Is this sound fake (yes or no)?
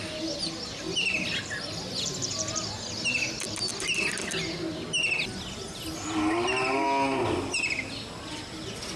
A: no